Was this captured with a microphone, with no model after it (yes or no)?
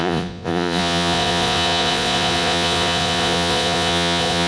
no